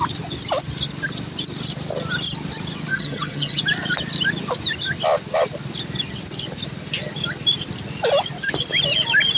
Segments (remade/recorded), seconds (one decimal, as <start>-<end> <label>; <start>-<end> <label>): 0.0-2.9 recorded; 2.9-3.6 remade; 3.6-9.4 recorded